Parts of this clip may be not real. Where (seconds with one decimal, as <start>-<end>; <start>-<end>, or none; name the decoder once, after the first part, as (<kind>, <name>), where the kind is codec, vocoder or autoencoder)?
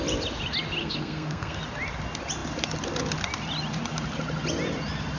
0.8-1.6 (codec, SNAC)